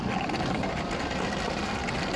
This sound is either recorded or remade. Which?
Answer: recorded